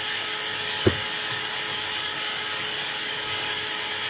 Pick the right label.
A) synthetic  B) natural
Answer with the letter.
A